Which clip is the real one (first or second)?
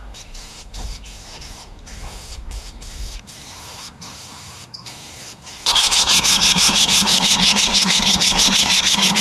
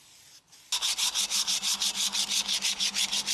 second